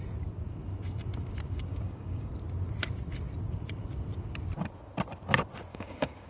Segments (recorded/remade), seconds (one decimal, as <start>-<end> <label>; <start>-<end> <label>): 0.0-1.7 recorded; 1.7-2.3 remade; 2.3-5.7 recorded; 5.7-6.3 remade